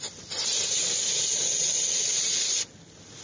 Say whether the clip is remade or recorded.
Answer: recorded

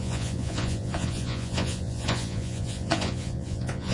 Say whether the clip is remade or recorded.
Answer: remade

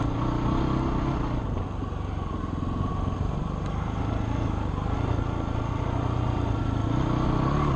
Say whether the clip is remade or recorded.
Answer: recorded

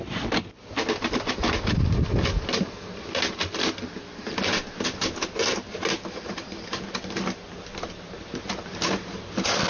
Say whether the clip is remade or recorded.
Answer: recorded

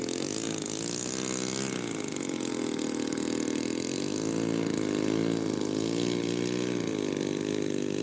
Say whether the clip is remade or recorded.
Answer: recorded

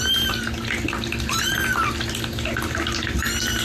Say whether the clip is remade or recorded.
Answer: recorded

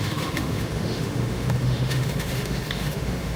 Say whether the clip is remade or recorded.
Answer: remade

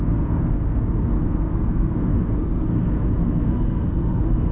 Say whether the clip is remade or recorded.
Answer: remade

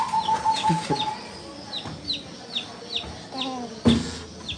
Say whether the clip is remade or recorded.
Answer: recorded